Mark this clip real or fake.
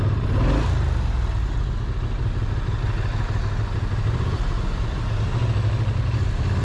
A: real